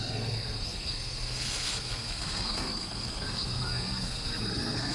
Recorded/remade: remade